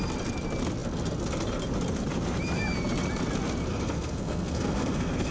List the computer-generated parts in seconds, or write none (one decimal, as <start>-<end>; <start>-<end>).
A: 3.7-5.3